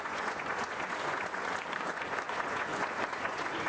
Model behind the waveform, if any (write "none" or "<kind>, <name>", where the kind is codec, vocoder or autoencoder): vocoder, Vocos